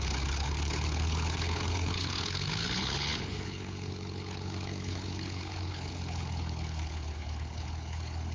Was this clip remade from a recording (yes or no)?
yes